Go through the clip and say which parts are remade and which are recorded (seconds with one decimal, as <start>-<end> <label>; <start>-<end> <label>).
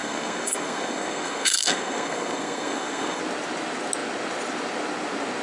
0.0-3.2 remade; 3.2-5.4 recorded